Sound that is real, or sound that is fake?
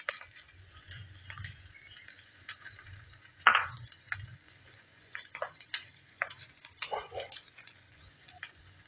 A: fake